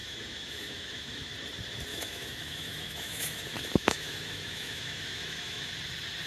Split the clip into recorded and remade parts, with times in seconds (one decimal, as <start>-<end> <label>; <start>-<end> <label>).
0.0-1.3 remade; 1.3-1.9 recorded; 1.9-5.7 remade; 5.7-6.3 recorded